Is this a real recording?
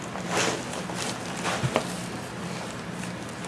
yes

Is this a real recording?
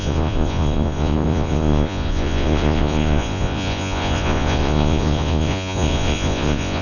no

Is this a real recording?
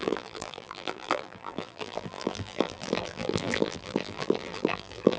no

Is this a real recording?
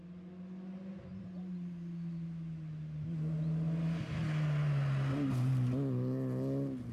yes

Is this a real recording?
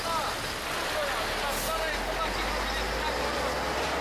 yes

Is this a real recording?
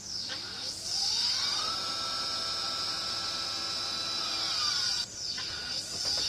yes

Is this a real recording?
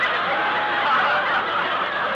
yes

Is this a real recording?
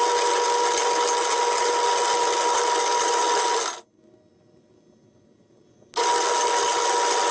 yes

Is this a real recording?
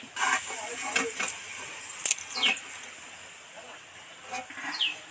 yes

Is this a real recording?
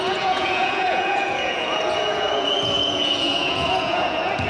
no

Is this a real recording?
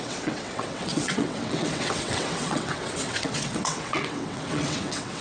no